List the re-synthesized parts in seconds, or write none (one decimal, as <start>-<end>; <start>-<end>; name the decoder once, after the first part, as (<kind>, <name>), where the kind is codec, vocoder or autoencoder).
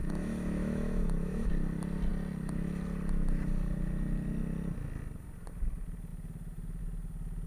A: 0.0-1.5 (autoencoder, DAC-VAE)